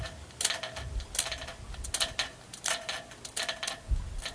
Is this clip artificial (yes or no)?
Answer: no